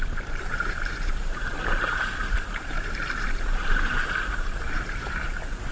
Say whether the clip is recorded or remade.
remade